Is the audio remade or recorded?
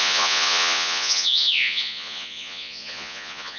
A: remade